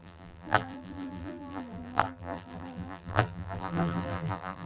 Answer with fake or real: fake